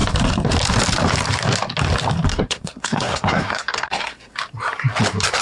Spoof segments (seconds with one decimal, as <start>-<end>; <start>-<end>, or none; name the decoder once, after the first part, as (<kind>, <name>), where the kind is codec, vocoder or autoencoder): 2.3-4.3 (codec, SNAC)